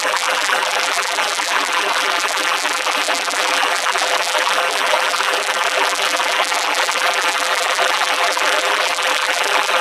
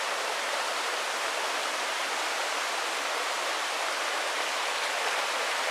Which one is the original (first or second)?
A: second